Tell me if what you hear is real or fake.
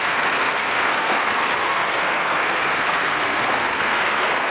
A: fake